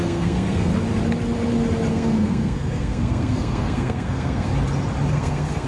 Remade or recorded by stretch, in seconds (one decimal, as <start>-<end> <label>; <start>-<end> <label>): 0.0-0.7 remade; 0.7-1.9 recorded; 1.9-4.5 remade; 4.5-5.1 recorded; 5.1-5.7 remade

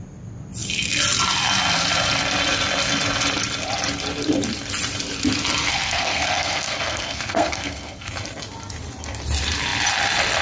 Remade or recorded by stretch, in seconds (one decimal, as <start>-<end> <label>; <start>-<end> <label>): 0.0-5.7 recorded; 5.7-8.1 remade; 8.1-10.4 recorded

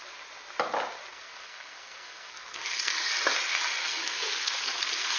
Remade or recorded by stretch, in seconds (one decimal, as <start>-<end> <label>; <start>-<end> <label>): 0.0-1.1 recorded; 1.1-3.1 remade; 3.1-3.8 recorded; 3.8-5.2 remade

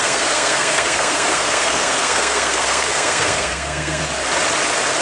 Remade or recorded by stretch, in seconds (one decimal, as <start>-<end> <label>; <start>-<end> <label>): 0.0-4.0 remade; 4.0-5.0 recorded

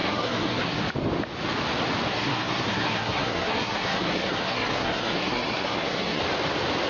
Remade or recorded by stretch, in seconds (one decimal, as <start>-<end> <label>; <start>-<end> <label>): 0.0-0.8 remade; 0.8-2.1 recorded; 2.1-6.2 remade; 6.2-6.9 recorded

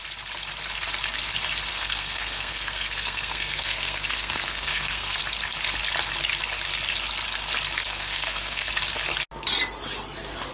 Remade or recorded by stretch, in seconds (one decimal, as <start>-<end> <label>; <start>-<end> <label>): 0.0-1.7 recorded; 1.7-5.2 remade; 5.2-7.8 recorded; 7.8-8.7 remade; 8.7-10.5 recorded